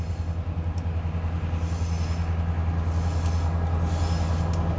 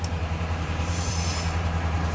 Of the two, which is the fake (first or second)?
second